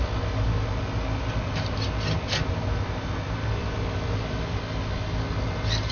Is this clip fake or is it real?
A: real